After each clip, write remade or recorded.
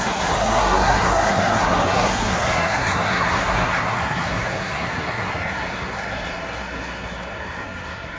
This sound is remade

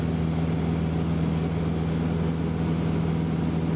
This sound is recorded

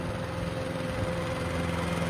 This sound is recorded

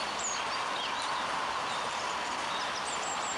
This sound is recorded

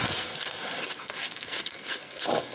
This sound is remade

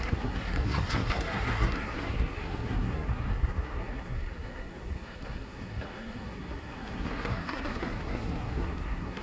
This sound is remade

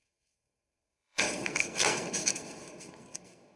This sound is remade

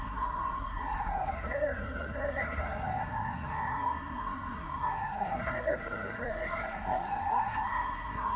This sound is remade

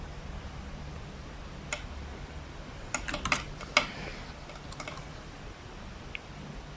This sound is recorded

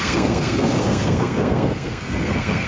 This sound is remade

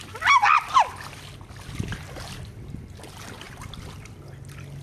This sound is recorded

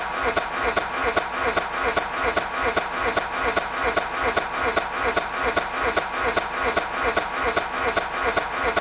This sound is recorded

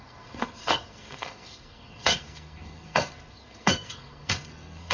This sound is remade